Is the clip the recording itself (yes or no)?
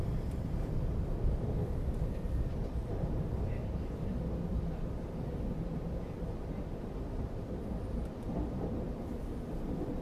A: no